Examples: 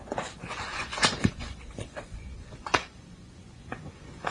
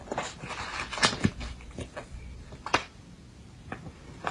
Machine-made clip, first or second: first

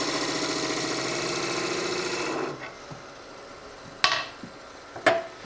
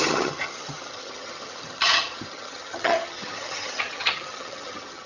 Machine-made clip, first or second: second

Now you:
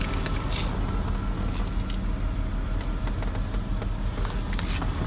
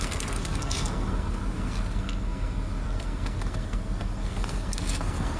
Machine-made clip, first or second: second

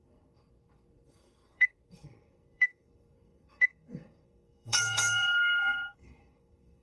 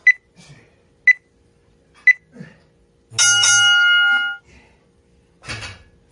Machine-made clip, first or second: first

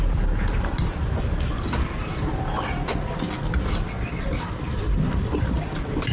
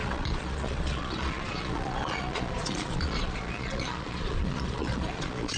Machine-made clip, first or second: second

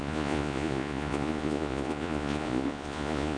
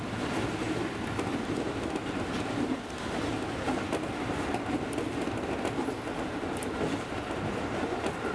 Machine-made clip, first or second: first